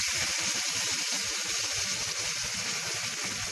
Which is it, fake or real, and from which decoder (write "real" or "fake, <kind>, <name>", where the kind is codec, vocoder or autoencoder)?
real